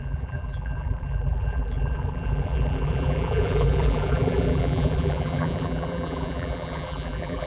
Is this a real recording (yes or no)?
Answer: no